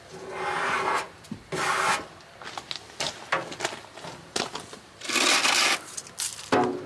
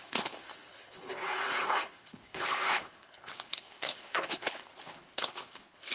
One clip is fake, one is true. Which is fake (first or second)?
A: second